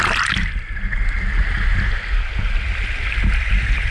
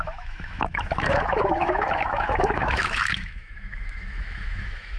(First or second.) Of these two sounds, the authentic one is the first